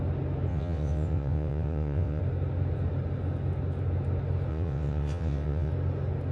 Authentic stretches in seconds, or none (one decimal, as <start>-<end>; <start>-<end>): 0.0-0.5; 2.2-4.5; 5.7-6.3